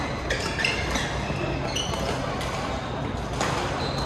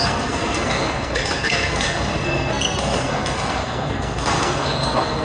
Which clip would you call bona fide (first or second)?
first